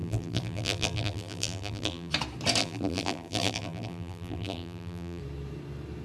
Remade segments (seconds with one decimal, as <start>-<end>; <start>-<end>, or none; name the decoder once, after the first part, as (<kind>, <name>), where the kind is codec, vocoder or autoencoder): 0.0-2.1 (vocoder, BigVGAN v2); 2.6-5.2